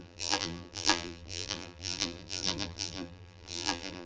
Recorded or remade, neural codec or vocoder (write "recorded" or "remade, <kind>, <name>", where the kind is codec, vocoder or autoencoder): remade, vocoder, BigVGAN v2